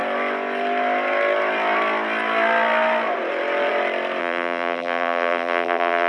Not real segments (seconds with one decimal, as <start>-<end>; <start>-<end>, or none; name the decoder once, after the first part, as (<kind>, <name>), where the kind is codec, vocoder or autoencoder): 4.2-6.1 (vocoder, BigVGAN v2)